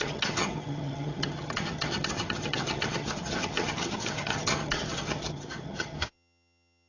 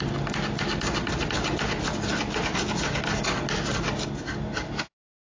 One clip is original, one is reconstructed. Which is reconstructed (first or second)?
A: first